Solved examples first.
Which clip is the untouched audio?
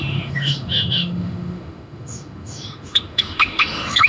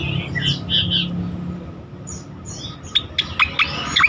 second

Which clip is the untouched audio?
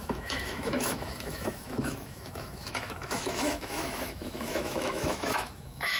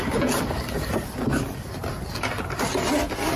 second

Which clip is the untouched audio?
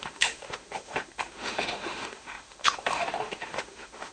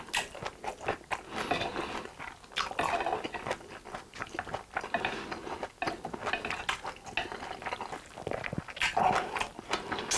second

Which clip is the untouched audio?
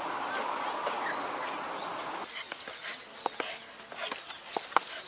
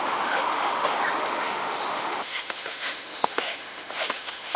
first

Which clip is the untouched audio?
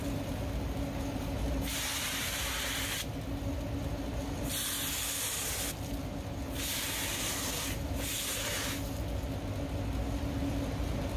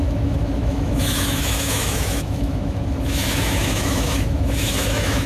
first